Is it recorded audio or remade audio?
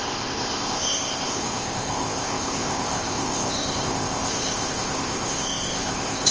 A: remade